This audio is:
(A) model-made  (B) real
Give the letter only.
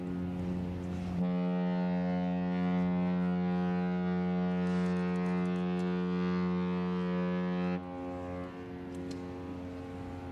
B